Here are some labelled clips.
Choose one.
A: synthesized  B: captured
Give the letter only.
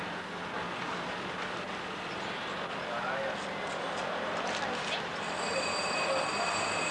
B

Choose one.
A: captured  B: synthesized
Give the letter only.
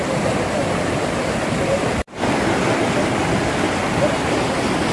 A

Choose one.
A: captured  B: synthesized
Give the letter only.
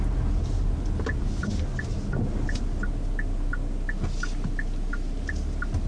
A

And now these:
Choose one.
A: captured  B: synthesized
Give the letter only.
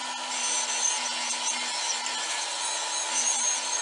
A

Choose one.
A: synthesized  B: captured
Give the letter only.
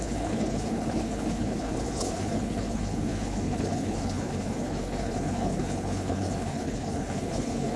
A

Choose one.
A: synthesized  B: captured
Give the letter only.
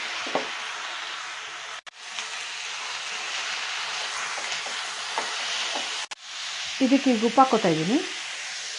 B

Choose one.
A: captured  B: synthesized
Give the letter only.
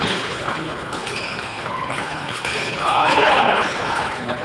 B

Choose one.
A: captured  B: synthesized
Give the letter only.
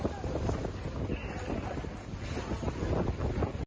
A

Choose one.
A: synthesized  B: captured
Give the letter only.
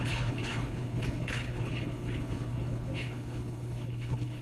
A